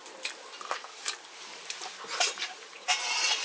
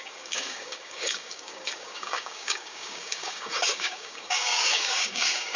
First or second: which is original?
first